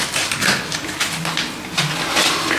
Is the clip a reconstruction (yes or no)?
no